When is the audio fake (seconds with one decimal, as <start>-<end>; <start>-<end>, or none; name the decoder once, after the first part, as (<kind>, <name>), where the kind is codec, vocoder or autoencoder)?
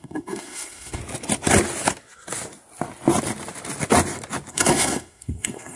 0.0-1.0 (codec, SNAC); 4.5-5.8